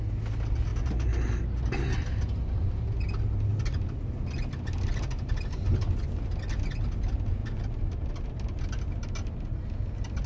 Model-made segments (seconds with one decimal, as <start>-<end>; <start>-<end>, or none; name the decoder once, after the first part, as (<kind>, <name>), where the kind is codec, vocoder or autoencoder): 0.7-1.4 (vocoder, BigVGAN v2); 7.4-8.1